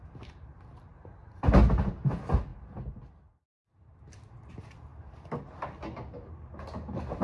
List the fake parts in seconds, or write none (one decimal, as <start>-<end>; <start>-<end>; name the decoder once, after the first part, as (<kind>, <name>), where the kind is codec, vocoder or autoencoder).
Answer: none